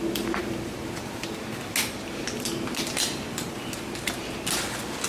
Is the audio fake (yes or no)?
no